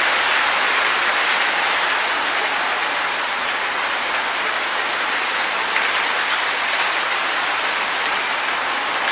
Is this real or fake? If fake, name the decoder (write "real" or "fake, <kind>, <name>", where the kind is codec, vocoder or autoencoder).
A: real